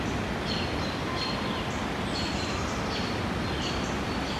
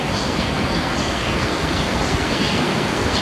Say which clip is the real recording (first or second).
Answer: first